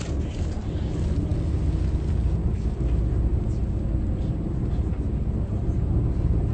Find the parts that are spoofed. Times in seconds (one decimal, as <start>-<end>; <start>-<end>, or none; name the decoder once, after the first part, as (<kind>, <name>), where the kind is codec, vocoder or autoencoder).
none